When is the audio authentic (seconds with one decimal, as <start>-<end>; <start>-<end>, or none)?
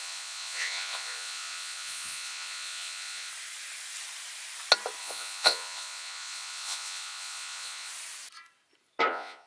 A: 3.3-5.0; 7.9-9.1